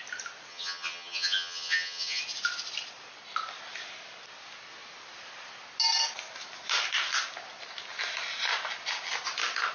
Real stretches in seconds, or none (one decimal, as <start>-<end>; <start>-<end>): 0.0-0.5; 2.2-9.7